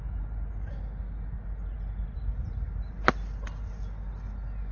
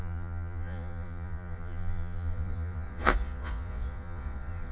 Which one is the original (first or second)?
first